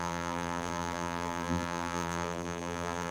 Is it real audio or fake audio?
fake